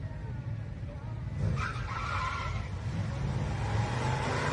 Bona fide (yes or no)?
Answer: yes